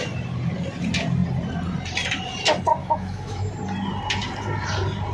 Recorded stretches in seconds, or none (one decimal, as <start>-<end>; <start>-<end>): 0.0-2.8; 3.5-5.1